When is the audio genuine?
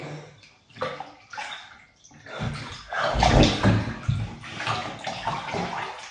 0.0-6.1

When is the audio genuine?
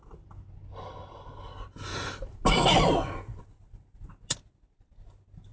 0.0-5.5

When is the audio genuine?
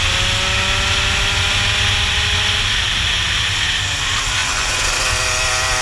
0.0-4.4; 5.1-5.8